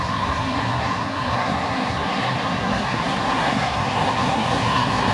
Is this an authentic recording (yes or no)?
no